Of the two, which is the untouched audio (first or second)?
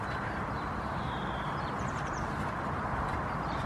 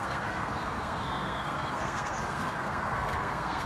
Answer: first